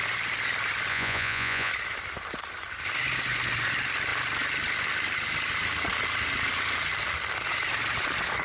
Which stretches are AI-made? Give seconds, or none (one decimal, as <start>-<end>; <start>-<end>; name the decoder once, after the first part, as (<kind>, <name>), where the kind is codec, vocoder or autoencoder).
0.9-1.7 (vocoder, Vocos)

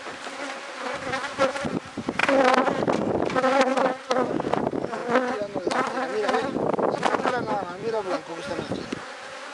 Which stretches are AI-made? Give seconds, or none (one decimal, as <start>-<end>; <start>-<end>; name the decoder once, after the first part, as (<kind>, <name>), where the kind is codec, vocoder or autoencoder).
7.8-8.5 (vocoder, Vocos)